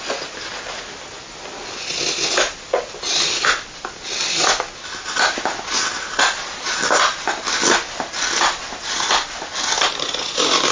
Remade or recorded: recorded